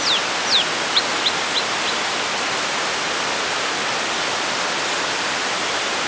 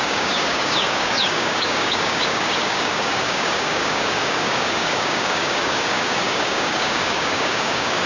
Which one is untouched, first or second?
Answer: first